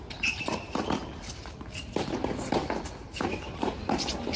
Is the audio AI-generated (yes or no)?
no